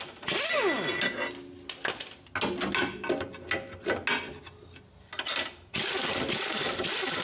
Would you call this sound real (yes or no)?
yes